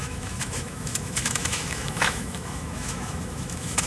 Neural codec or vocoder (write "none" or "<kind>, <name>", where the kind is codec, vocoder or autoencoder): autoencoder, DAC-VAE